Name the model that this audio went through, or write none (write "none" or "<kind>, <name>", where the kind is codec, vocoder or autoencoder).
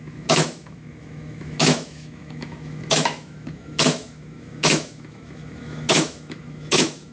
autoencoder, DAC-VAE